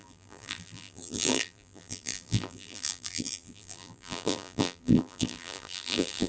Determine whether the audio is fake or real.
fake